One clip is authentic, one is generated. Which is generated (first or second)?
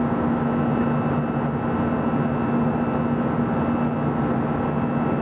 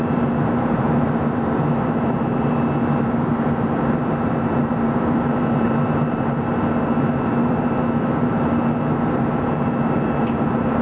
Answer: second